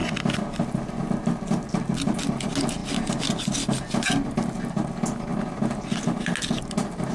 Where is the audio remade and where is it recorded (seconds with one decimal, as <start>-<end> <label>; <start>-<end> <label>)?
0.0-0.6 remade; 0.6-7.1 recorded